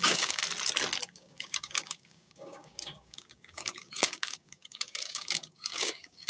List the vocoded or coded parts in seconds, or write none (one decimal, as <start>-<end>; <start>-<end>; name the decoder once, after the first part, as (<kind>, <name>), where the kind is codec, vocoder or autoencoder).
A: 0.0-0.4 (codec, DAC); 1.0-6.3